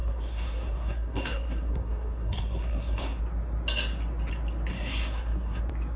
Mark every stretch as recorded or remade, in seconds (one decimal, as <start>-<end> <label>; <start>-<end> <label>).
0.0-3.2 remade; 3.2-4.7 recorded; 4.7-5.6 remade; 5.6-6.0 recorded